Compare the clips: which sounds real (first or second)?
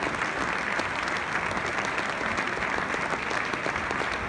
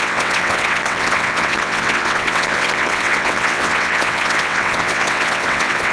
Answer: first